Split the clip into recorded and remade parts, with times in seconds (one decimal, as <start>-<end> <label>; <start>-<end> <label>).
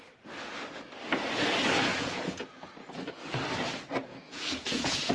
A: 0.0-1.9 recorded; 1.9-2.7 remade; 2.7-4.1 recorded; 4.1-5.1 remade